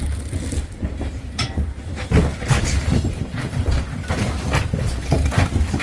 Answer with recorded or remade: recorded